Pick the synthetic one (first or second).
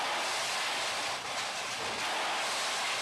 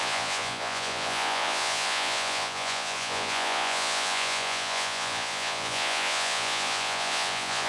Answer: second